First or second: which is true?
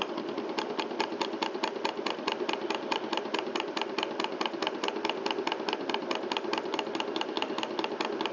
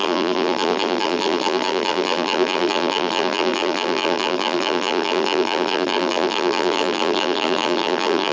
first